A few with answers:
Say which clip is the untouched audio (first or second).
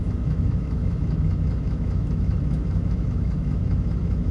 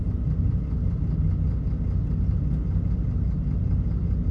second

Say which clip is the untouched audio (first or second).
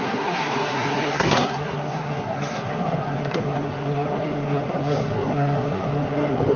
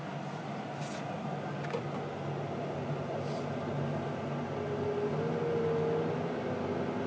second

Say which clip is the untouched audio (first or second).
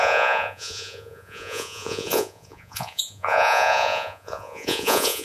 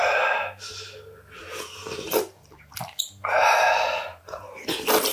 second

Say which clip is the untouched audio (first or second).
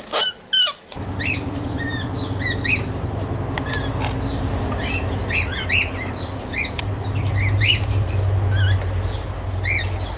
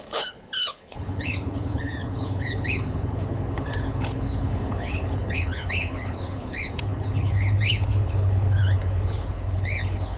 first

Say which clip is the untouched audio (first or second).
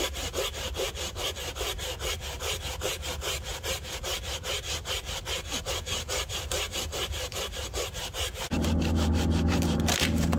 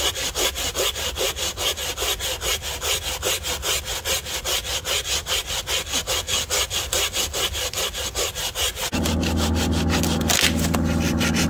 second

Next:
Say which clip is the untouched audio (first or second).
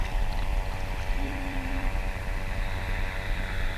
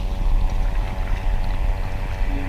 second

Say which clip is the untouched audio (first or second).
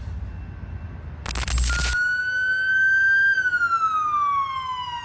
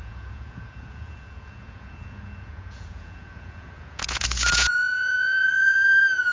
first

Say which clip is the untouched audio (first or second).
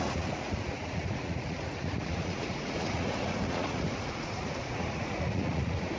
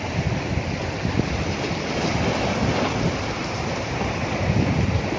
second